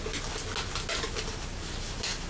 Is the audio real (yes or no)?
yes